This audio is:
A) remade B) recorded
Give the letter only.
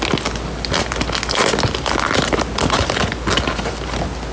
B